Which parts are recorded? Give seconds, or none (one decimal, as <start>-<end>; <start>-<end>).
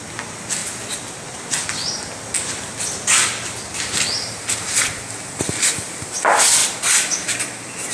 0.0-0.6; 1.5-7.9